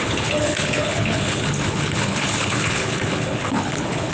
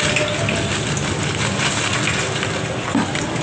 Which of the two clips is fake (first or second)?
first